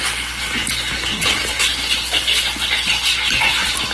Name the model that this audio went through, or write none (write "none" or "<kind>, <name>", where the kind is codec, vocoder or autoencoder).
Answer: none